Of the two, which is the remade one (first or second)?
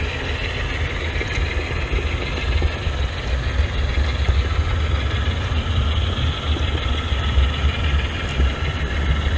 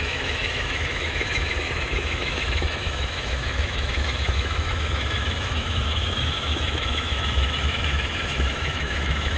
second